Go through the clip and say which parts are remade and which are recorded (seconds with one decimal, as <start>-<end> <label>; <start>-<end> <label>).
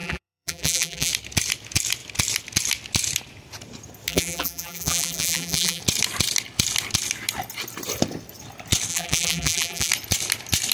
0.0-1.1 remade; 1.1-4.1 recorded; 4.1-5.8 remade; 5.8-8.9 recorded; 8.9-9.9 remade; 9.9-10.7 recorded